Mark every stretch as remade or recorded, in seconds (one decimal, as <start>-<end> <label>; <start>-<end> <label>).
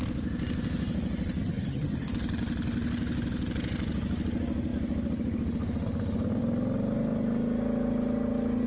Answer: 0.0-1.4 recorded; 1.4-2.1 remade; 2.1-8.7 recorded